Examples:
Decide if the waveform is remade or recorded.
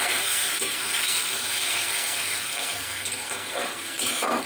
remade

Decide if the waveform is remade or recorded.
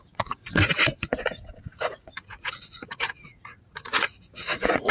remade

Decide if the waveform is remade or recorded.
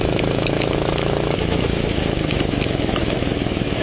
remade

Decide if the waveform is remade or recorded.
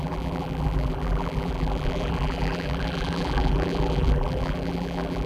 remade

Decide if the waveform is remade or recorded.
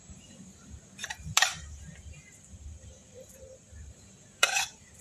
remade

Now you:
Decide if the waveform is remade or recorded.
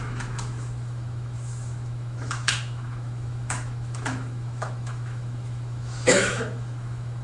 remade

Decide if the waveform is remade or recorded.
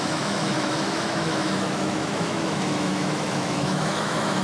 remade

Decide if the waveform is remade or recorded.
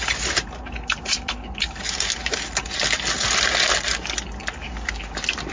recorded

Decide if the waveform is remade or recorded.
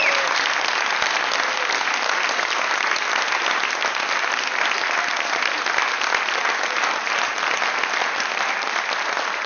recorded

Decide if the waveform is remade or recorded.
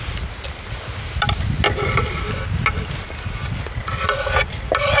recorded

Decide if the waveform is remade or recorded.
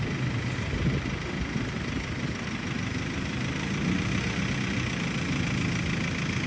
recorded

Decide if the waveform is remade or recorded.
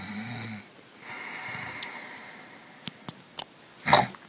recorded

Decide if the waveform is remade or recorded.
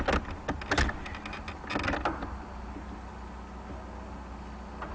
recorded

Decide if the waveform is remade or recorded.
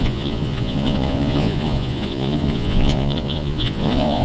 remade